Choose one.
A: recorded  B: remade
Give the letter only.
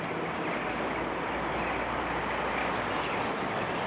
A